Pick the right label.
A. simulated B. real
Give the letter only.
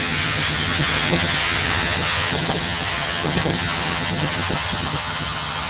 A